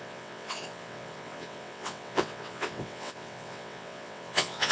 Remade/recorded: remade